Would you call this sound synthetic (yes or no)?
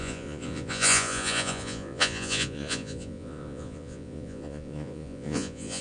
yes